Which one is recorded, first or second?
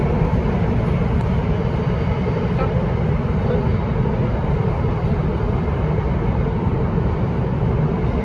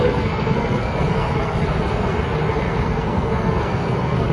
first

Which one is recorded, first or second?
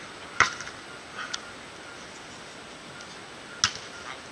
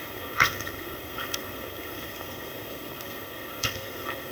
first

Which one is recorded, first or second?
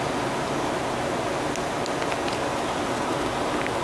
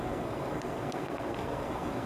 first